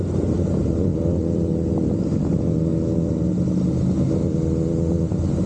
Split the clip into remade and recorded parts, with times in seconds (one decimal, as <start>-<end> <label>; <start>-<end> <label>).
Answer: 0.0-0.9 recorded; 0.9-2.0 remade; 2.0-5.5 recorded